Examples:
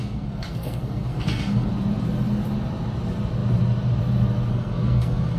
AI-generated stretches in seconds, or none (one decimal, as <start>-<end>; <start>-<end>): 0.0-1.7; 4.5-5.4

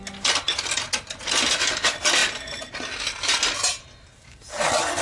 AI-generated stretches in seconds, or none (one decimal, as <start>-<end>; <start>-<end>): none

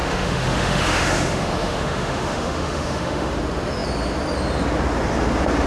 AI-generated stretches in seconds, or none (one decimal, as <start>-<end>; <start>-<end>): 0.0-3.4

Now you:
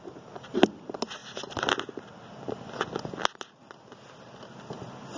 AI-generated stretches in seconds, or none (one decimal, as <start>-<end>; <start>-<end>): none